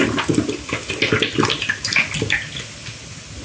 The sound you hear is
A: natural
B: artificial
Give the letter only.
A